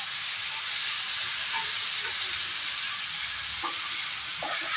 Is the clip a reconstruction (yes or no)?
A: yes